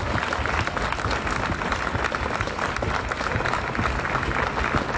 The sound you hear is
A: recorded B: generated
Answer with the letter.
A